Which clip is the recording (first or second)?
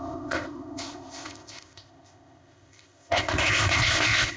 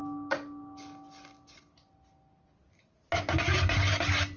second